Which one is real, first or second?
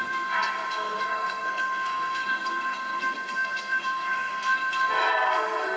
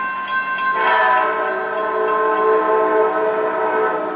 second